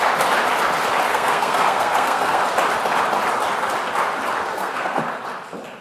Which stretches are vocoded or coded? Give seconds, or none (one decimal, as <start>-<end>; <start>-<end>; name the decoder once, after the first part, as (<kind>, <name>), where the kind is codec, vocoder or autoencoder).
1.1-2.4 (codec, SNAC); 4.5-5.0